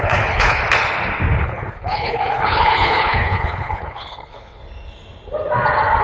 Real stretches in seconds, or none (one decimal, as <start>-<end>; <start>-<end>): 0.6-1.4; 4.6-6.0